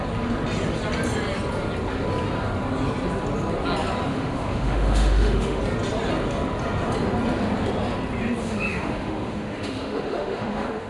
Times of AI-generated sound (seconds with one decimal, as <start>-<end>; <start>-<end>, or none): 4.1-5.6; 8.4-10.9